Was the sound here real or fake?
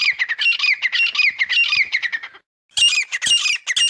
real